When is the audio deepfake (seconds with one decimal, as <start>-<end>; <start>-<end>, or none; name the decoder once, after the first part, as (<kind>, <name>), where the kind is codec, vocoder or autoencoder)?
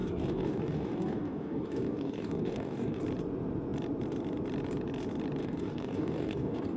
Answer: 0.0-3.0 (codec, DAC); 5.4-6.8